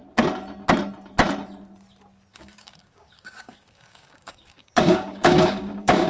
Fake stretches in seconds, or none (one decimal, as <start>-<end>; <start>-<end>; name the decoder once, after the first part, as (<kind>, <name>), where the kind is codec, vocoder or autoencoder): 2.3-6.1 (codec, DAC)